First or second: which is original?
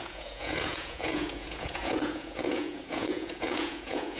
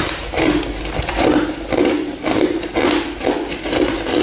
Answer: second